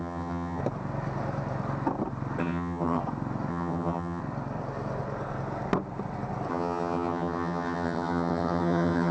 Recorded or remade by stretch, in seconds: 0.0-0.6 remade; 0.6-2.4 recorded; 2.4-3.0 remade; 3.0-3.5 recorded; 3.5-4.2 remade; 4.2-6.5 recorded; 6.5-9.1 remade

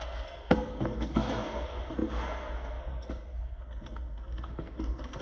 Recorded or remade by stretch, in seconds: 0.0-5.2 remade

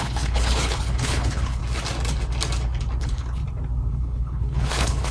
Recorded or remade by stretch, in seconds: 0.0-1.6 remade; 1.6-3.0 recorded; 3.0-3.4 remade; 3.4-3.9 recorded; 3.9-5.1 remade

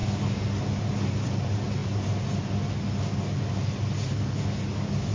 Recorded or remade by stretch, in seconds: 0.0-5.1 recorded

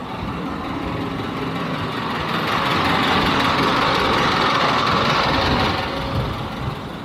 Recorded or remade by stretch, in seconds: 0.0-7.0 recorded

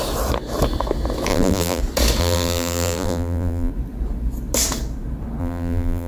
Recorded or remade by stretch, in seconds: 0.0-1.3 recorded; 1.3-1.8 remade; 1.8-2.2 recorded; 2.2-3.7 remade; 3.7-5.4 recorded; 5.4-6.1 remade